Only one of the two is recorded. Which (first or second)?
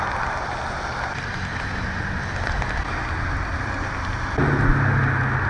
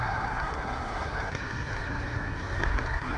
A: first